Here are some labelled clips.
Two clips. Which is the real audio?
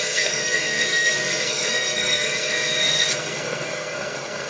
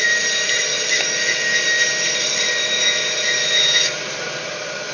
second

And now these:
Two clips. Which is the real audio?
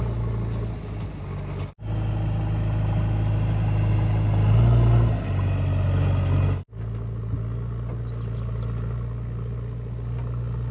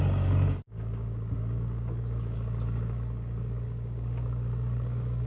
first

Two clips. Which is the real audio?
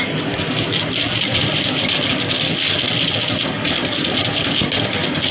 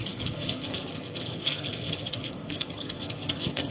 first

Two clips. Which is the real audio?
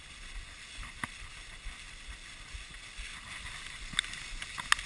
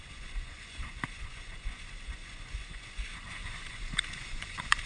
first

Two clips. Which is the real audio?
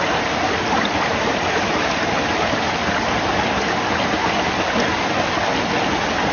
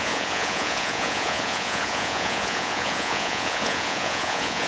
first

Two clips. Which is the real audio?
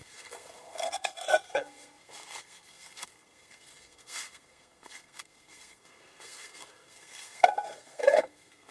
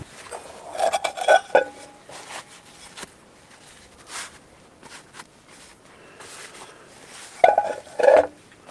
second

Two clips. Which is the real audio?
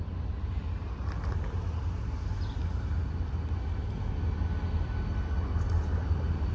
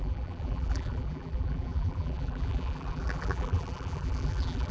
first